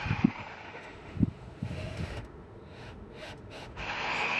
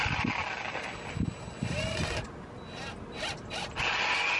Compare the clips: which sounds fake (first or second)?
first